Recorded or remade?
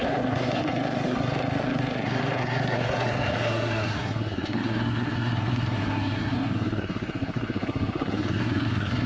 remade